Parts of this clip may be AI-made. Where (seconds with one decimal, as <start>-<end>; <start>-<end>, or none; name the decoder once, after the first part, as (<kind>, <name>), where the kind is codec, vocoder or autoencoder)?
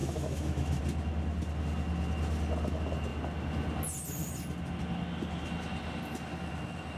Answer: 0.0-0.8 (autoencoder, DAC-VAE)